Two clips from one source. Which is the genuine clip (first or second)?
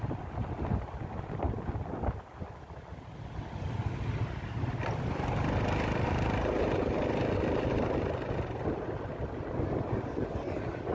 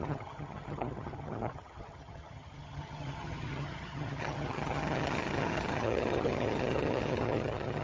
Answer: first